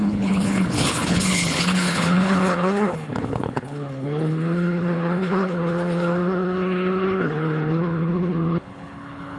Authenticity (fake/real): fake